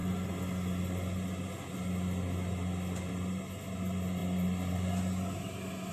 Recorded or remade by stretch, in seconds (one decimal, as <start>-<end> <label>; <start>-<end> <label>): 0.0-5.9 recorded